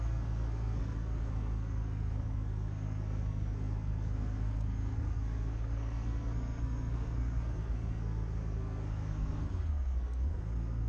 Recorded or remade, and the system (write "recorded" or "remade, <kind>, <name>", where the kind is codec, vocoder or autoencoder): remade, codec, SNAC